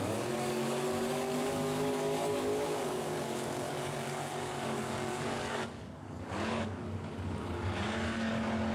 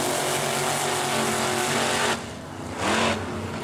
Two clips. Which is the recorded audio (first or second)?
second